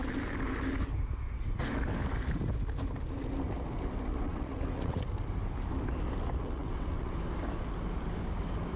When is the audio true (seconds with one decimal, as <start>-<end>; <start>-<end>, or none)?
0.0-4.1; 5.0-6.4; 7.1-8.8